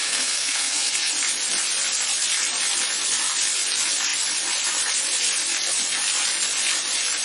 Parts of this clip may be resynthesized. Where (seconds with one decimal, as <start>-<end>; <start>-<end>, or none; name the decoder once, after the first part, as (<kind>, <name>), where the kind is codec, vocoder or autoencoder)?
0.0-1.1 (codec, SNAC)